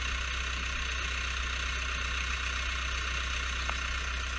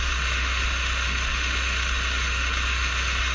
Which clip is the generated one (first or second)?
second